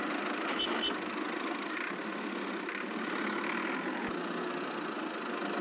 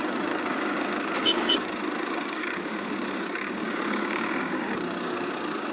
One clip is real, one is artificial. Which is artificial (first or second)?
second